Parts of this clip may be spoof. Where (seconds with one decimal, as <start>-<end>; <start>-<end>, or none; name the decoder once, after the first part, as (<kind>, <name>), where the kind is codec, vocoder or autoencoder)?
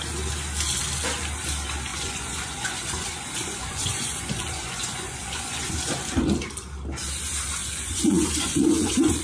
1.9-5.7 (vocoder, Vocos); 7.6-9.2